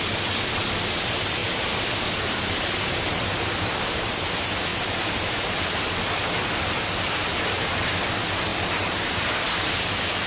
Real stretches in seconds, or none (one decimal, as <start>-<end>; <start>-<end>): 0.0-1.4; 3.7-4.7; 5.7-8.5; 9.3-10.3